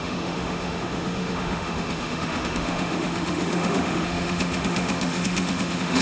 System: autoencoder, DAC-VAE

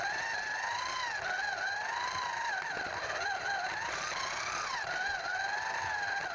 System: none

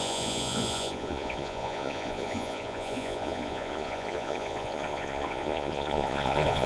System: vocoder, Vocos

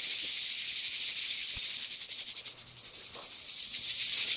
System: none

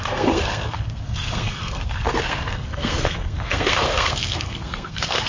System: codec, SNAC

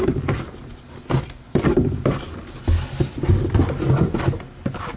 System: none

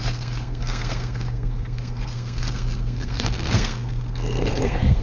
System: codec, SNAC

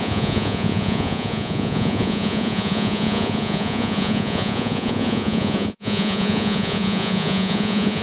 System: vocoder, Vocos